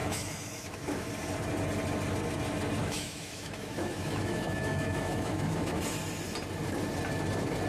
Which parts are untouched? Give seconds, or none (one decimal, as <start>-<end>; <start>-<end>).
1.1-2.8; 5.8-7.7